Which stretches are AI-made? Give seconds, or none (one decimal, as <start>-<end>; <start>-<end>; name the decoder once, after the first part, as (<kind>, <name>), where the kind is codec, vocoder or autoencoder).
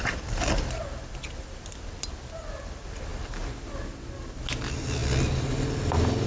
none